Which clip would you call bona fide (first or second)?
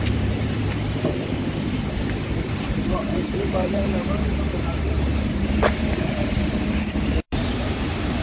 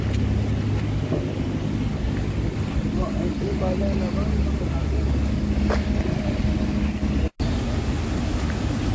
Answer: second